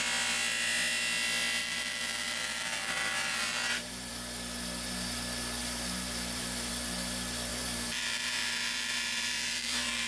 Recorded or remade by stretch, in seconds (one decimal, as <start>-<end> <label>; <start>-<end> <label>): 0.0-1.6 recorded; 1.6-4.1 remade; 4.1-5.6 recorded; 5.6-6.7 remade; 6.7-7.5 recorded; 7.5-10.1 remade